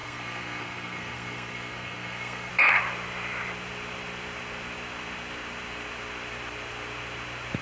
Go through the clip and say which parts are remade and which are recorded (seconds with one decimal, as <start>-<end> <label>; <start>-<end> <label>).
0.0-2.5 remade; 2.5-7.6 recorded